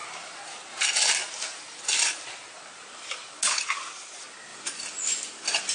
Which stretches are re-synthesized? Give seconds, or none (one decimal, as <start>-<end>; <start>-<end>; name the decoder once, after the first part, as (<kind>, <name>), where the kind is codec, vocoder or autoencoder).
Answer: none